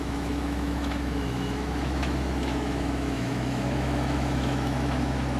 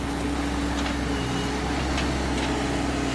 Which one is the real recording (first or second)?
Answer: second